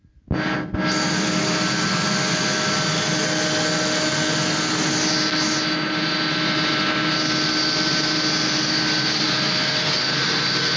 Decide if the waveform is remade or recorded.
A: recorded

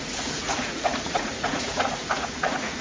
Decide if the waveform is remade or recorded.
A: remade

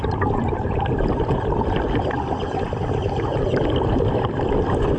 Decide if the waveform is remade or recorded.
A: remade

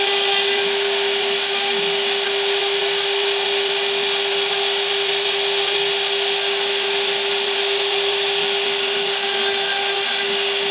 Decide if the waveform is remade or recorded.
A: recorded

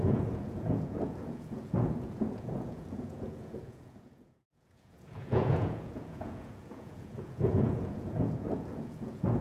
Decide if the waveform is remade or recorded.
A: remade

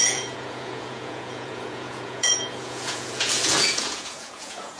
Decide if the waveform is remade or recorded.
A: remade